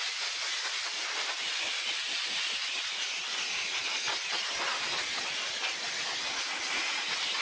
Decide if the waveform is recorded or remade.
recorded